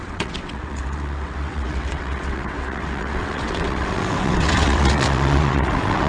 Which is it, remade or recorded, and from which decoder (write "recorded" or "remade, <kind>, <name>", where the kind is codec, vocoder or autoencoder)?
remade, vocoder, WaveNeXt